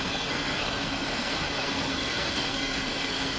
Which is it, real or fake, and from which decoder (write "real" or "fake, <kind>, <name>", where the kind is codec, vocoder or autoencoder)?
fake, codec, SNAC